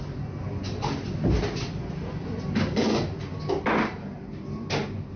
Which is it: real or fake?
real